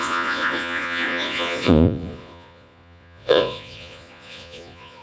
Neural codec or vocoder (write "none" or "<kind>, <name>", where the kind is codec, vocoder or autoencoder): vocoder, Vocos